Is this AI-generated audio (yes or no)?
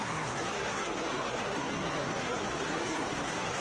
yes